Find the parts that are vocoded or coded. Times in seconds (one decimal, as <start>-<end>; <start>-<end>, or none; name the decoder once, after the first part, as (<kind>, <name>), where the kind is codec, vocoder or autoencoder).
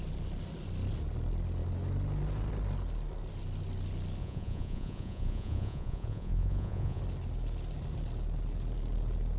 4.2-7.0 (vocoder, Vocos)